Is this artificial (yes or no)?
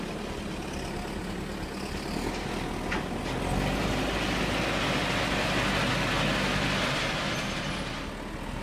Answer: no